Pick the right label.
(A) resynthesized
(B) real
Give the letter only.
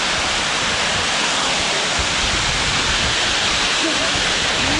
B